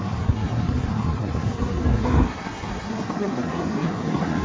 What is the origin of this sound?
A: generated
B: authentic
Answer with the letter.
A